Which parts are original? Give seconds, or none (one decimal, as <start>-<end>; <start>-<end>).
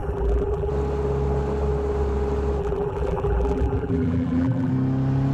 0.7-2.6; 4.7-5.3